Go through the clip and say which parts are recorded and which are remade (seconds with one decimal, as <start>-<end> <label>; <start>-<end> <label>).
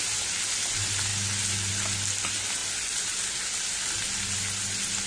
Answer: 0.0-5.1 recorded